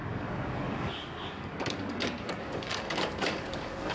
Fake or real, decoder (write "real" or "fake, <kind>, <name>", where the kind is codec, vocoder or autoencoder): fake, codec, DAC